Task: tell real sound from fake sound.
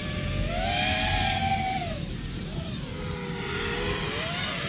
real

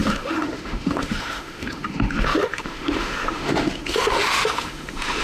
fake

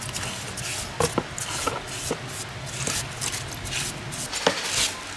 real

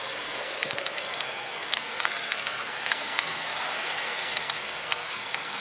fake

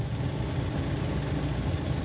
real